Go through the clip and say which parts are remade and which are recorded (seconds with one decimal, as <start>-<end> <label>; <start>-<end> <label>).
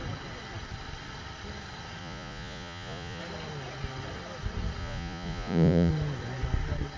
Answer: 0.0-2.0 recorded; 2.0-3.2 remade; 3.2-4.8 recorded; 4.8-5.9 remade; 5.9-7.0 recorded